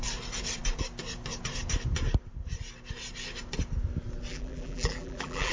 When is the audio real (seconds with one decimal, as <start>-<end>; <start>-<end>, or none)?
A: 0.0-4.3